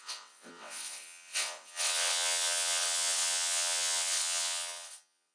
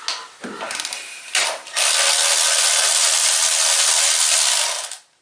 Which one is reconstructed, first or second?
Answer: first